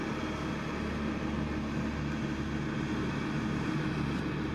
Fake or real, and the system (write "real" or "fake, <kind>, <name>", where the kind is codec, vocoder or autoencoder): real